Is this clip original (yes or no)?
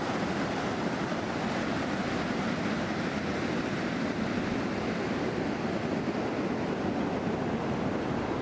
yes